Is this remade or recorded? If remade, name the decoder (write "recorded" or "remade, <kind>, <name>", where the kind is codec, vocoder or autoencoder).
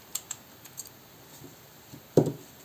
recorded